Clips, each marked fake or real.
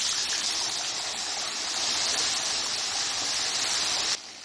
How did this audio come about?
real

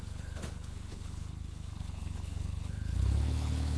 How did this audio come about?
fake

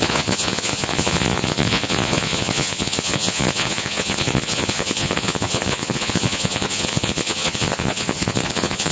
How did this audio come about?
fake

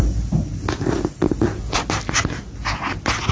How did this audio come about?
real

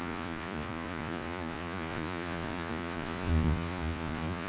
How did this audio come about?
fake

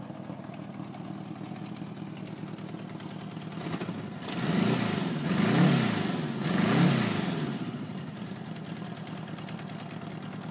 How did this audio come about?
real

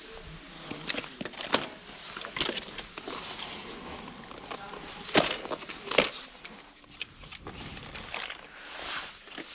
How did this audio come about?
real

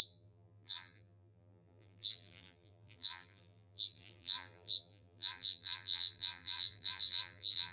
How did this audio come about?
fake